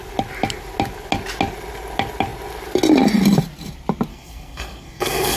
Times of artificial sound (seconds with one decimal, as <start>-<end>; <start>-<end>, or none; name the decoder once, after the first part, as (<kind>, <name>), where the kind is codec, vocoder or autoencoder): 4.1-5.4 (codec, SNAC)